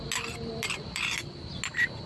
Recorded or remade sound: recorded